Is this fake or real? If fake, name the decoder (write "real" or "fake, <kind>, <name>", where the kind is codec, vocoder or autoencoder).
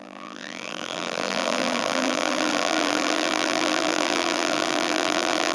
fake, vocoder, BigVGAN v2